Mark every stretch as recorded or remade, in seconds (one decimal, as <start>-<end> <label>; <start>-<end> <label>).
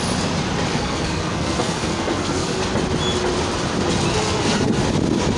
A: 0.0-0.7 recorded; 0.7-2.6 remade; 2.6-4.1 recorded; 4.1-4.8 remade; 4.8-5.4 recorded